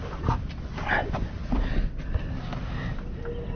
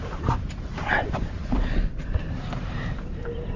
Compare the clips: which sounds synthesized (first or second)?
second